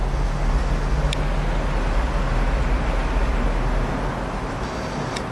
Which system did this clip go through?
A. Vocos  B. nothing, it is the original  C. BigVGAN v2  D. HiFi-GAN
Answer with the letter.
B